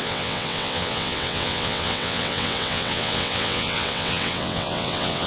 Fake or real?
fake